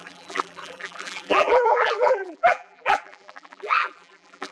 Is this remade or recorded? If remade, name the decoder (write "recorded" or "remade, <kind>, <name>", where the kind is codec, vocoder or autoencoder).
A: remade, vocoder, BigVGAN v2